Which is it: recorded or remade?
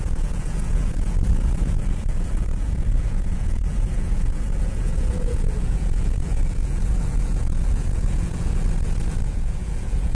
remade